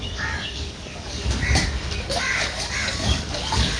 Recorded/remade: remade